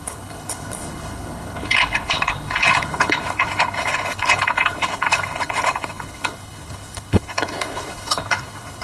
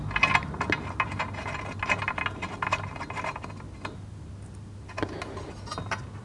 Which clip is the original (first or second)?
second